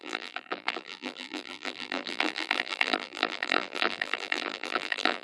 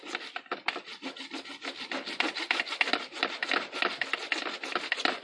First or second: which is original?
second